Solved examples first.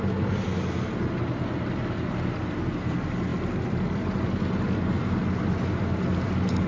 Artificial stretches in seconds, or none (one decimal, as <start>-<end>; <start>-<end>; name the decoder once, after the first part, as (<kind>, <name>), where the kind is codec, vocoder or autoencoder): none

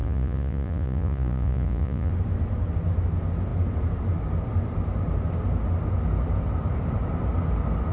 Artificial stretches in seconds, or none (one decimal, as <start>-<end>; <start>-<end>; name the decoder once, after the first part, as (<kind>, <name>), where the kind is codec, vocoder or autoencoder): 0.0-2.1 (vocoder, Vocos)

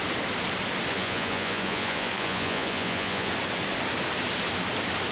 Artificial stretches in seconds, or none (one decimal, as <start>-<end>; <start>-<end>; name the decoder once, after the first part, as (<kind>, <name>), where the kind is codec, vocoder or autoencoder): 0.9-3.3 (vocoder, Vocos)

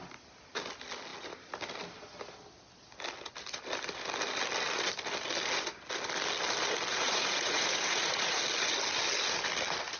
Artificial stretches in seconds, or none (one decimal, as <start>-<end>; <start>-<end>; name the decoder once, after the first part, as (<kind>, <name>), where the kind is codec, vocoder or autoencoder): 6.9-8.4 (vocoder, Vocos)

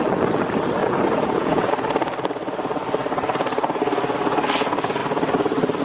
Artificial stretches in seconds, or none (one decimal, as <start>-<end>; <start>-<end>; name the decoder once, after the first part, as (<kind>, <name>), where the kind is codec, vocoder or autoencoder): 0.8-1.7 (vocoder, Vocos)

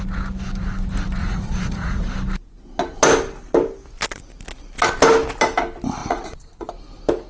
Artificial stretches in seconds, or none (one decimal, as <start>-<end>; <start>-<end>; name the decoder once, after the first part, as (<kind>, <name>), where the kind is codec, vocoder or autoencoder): 1.2-2.1 (vocoder, Vocos); 6.0-6.7

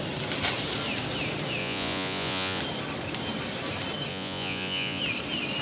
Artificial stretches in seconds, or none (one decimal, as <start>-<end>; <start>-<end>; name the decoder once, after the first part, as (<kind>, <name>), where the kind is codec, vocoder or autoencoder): 1.6-2.6 (vocoder, Vocos); 4.1-5.0

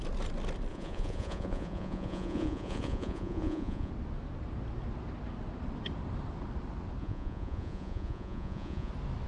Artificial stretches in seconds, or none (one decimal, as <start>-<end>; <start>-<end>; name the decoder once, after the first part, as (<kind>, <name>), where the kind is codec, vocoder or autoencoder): 0.7-3.9 (vocoder, Vocos); 7.0-8.9